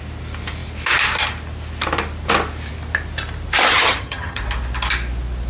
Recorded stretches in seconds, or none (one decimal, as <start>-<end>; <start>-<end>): 0.0-3.7; 4.4-5.5